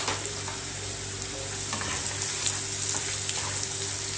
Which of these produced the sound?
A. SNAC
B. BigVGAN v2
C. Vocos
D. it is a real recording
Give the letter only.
D